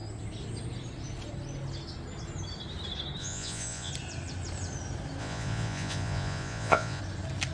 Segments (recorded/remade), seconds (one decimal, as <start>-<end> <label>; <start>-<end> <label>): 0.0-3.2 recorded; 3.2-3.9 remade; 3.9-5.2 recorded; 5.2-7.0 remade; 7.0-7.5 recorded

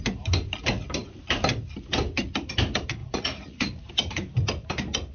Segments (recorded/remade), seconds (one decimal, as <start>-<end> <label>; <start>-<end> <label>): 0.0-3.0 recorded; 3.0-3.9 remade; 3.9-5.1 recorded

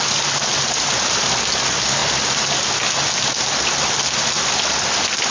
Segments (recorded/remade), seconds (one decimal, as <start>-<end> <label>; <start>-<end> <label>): 0.0-5.3 recorded